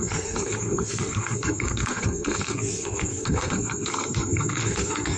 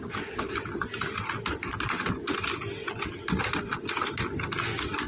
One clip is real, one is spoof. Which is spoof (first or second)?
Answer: first